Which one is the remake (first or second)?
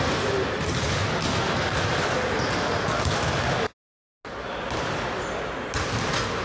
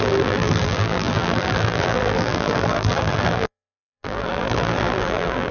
second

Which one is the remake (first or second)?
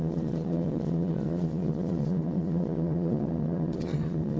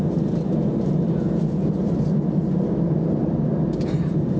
first